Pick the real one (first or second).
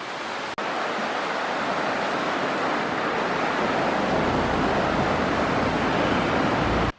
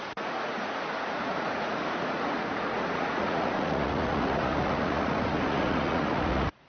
first